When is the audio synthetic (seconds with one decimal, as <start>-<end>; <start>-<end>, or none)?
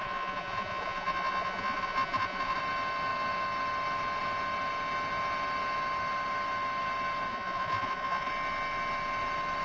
0.0-2.6; 7.3-8.3